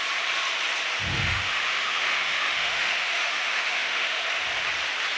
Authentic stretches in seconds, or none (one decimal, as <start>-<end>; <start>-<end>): 0.0-1.1; 4.2-5.2